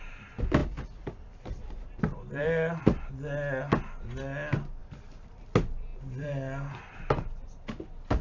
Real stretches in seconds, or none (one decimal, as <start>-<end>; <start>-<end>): 0.0-0.6; 3.1-4.8; 5.4-5.9; 6.9-8.2